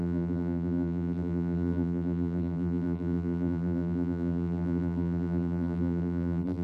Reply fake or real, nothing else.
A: fake